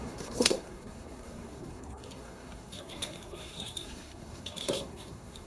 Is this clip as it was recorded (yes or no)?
no